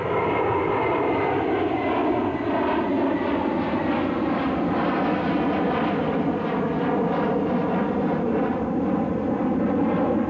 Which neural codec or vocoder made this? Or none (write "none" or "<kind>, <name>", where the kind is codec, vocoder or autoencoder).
none